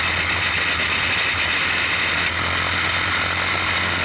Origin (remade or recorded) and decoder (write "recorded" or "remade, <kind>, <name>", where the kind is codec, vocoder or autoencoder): recorded